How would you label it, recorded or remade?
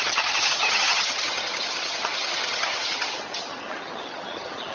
remade